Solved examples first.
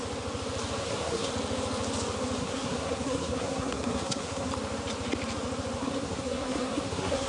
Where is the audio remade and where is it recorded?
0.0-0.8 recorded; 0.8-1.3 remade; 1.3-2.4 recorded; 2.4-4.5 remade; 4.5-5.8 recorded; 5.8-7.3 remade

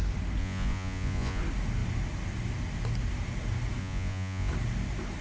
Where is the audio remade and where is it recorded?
0.0-0.4 recorded; 0.4-1.4 remade; 1.4-3.8 recorded; 3.8-4.5 remade; 4.5-5.2 recorded